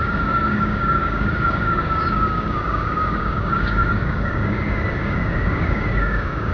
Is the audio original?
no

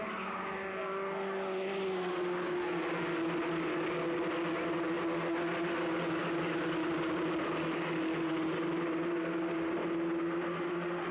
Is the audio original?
yes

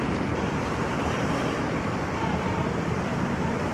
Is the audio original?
no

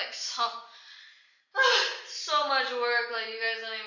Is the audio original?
yes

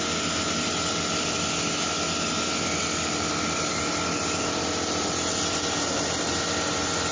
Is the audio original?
yes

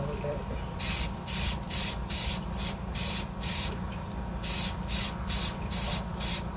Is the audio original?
yes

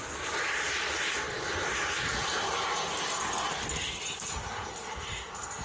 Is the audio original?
yes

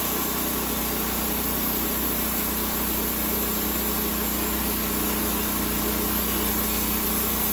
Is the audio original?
yes